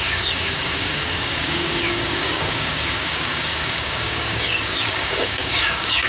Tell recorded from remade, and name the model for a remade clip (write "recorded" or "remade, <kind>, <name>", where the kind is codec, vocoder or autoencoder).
remade, codec, DAC